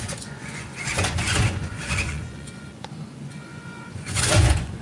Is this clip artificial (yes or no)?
yes